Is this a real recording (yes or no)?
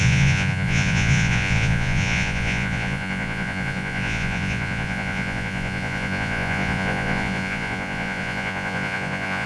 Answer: no